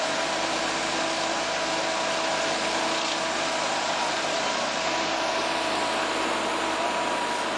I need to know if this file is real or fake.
real